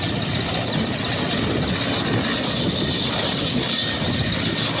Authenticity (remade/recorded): recorded